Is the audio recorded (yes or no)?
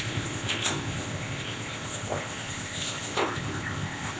no